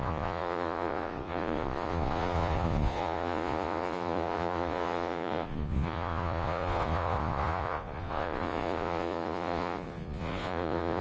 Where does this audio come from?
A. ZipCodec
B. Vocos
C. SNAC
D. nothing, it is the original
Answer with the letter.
B